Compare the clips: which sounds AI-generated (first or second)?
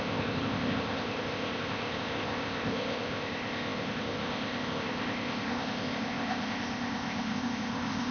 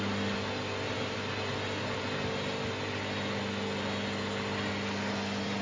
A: first